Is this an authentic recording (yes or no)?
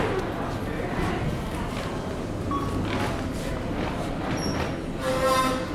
yes